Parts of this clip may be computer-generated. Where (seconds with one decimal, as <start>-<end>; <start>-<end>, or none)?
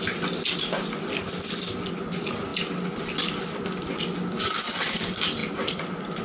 none